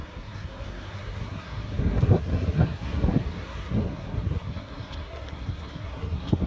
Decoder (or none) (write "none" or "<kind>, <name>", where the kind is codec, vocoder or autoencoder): codec, SNAC